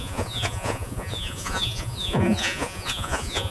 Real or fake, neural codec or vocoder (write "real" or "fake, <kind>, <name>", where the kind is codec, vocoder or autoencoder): fake, vocoder, Vocos